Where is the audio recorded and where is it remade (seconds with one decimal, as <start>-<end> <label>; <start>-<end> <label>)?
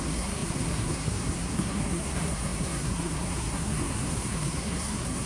0.0-5.3 remade